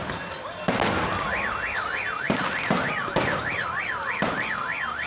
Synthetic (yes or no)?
no